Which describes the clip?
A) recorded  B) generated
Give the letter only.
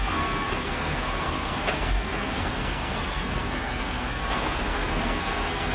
B